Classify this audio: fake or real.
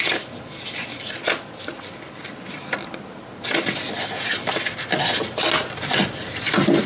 real